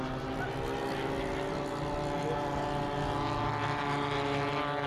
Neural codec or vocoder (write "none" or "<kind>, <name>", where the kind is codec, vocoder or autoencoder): none